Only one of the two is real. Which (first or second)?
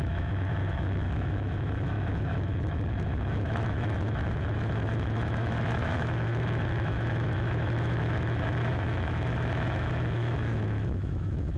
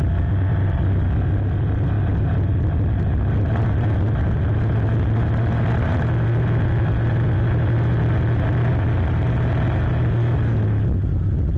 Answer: second